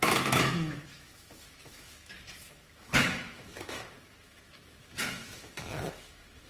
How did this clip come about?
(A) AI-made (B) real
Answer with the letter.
A